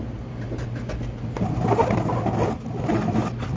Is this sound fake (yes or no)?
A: no